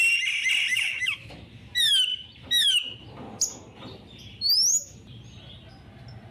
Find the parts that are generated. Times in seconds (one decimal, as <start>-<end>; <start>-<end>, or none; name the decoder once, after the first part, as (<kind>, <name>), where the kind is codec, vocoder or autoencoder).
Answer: 0.7-1.3 (autoencoder, DAC-VAE)